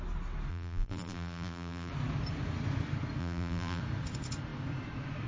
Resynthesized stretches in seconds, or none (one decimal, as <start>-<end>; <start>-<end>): 0.5-1.9; 3.2-3.8